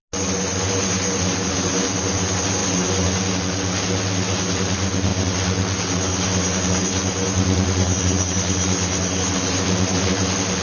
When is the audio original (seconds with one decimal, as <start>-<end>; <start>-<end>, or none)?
0.0-10.6